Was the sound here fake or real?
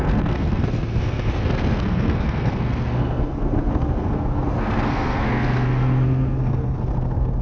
fake